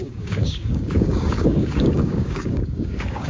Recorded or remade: remade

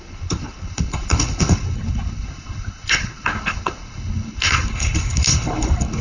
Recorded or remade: remade